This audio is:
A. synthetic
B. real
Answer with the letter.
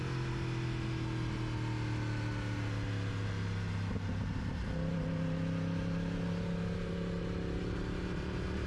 B